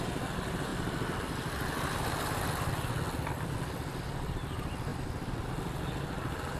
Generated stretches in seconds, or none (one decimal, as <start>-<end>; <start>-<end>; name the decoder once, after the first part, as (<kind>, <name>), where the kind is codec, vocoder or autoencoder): none